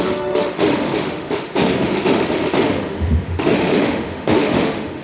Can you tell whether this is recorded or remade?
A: remade